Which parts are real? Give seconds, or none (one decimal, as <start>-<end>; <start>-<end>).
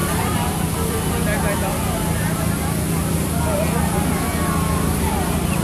0.0-5.6